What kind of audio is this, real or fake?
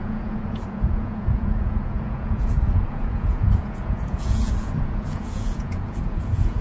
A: fake